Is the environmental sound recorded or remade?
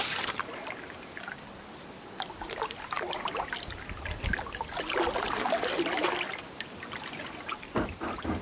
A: recorded